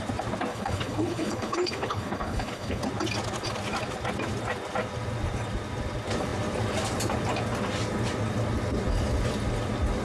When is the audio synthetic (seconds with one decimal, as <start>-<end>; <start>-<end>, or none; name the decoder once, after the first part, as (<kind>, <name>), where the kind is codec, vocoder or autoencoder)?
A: 0.5-2.8 (codec, HILCodec)